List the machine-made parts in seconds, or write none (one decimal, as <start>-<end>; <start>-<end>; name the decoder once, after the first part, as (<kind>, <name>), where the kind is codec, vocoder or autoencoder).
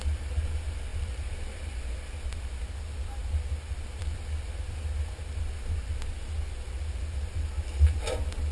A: none